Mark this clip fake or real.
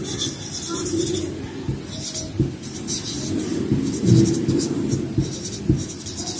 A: real